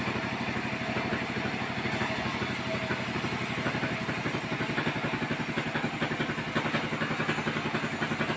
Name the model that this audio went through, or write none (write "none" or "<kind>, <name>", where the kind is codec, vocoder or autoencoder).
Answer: none